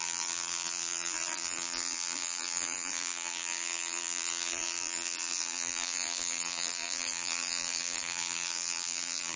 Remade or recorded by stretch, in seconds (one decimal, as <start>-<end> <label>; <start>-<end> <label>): 0.0-9.4 remade